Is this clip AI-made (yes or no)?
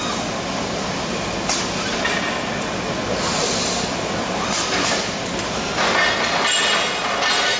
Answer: no